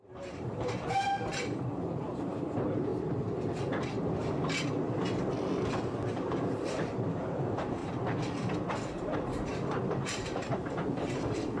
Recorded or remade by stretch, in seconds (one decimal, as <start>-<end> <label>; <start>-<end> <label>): 0.0-2.9 remade; 2.9-6.1 recorded; 6.1-7.8 remade; 7.8-8.9 recorded; 8.9-9.5 remade; 9.5-10.1 recorded; 10.1-11.6 remade